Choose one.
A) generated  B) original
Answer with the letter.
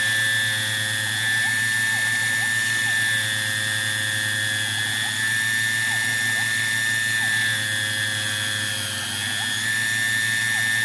B